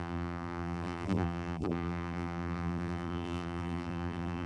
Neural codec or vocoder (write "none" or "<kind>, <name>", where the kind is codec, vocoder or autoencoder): vocoder, BigVGAN v2